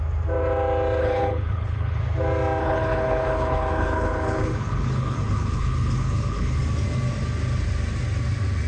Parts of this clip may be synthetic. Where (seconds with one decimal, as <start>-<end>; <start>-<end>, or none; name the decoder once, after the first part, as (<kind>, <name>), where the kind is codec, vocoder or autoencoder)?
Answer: 1.0-2.0 (codec, HILCodec); 2.6-6.6